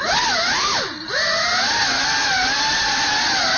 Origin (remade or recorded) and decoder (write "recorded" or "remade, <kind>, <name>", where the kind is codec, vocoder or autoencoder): recorded